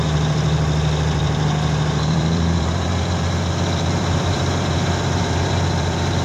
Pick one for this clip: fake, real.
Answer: fake